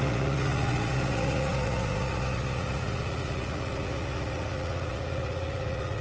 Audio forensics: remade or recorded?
remade